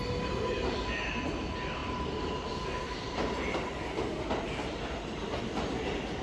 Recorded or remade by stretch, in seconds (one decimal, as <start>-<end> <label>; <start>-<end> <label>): 0.0-6.2 recorded